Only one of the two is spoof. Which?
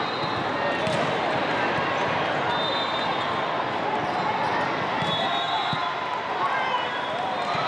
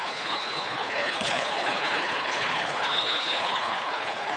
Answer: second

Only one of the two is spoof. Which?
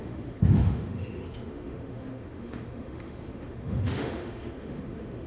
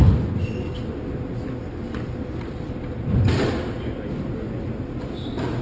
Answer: first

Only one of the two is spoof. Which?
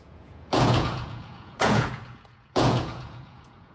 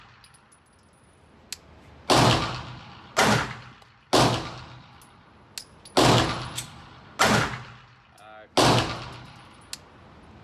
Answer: first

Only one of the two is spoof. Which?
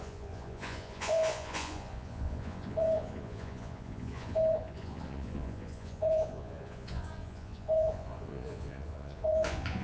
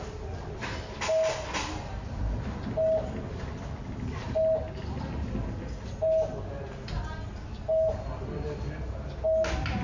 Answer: first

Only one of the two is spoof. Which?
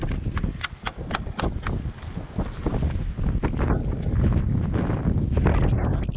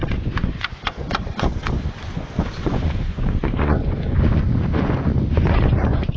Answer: second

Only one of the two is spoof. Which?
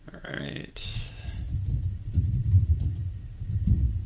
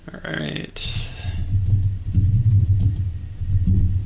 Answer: first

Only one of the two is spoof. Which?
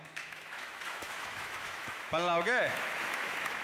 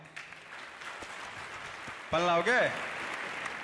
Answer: first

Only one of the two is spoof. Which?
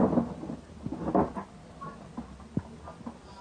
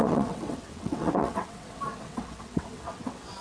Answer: second